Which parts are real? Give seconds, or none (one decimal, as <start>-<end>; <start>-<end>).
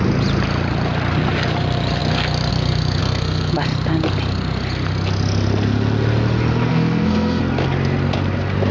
0.0-3.0; 3.5-6.7; 7.4-8.7